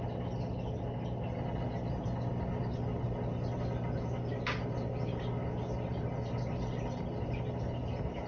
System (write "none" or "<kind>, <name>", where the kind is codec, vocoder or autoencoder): none